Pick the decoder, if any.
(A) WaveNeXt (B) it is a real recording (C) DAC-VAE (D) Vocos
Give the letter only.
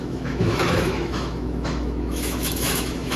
C